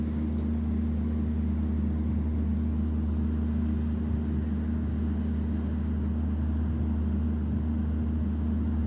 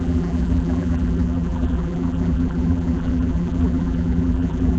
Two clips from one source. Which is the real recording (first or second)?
first